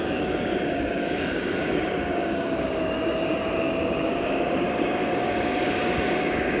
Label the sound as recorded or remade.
remade